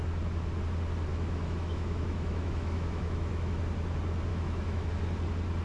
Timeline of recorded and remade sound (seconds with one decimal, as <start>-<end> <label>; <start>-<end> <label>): 0.0-1.1 recorded; 1.1-3.6 remade; 3.6-4.3 recorded; 4.3-4.9 remade; 4.9-5.6 recorded